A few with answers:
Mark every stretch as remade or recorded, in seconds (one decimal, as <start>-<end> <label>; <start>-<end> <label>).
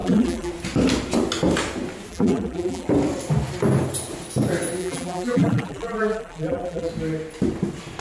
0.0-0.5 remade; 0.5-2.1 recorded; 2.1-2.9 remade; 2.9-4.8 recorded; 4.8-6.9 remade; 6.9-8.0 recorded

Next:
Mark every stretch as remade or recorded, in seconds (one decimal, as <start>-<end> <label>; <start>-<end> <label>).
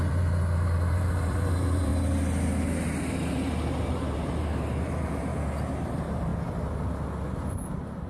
0.0-1.9 remade; 1.9-3.3 recorded; 3.3-5.3 remade; 5.3-5.8 recorded; 5.8-6.3 remade; 6.3-7.5 recorded; 7.5-8.1 remade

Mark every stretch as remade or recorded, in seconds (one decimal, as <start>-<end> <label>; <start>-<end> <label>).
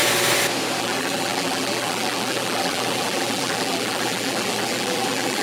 0.0-0.8 recorded; 0.8-5.4 remade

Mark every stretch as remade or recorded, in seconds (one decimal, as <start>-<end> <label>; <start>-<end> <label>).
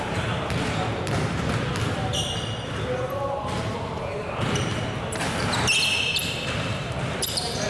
0.0-7.7 recorded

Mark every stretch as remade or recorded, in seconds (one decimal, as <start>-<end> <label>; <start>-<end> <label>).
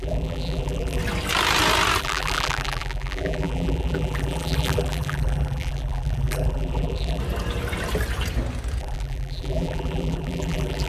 0.0-1.0 remade; 1.0-2.0 recorded; 2.0-7.2 remade; 7.2-8.8 recorded; 8.8-10.9 remade